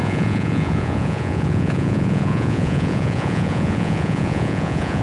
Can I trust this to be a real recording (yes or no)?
no